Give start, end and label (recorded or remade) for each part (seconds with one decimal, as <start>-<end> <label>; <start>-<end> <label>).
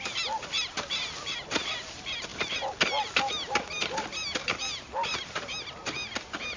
0.0-6.6 recorded